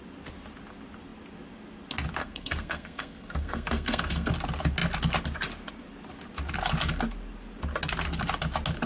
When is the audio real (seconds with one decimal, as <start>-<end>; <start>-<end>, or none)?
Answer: 0.0-2.2; 4.3-8.9